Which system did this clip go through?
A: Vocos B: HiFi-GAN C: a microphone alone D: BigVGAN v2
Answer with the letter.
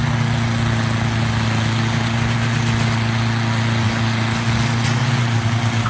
C